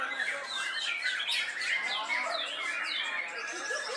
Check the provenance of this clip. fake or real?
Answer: real